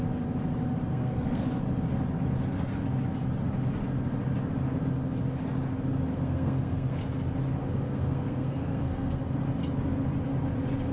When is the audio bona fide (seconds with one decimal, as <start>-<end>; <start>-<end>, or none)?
0.0-0.9; 1.4-6.1; 7.0-7.6; 9.2-10.9